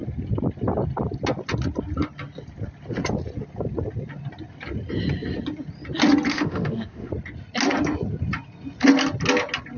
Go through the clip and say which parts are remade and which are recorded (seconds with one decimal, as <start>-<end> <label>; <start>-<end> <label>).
0.0-6.3 recorded; 6.3-7.1 remade; 7.1-9.8 recorded